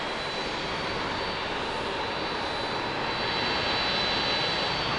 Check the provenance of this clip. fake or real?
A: real